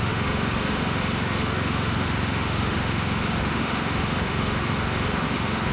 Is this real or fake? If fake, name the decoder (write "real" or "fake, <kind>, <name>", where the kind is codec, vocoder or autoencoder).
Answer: fake, autoencoder, DAC-VAE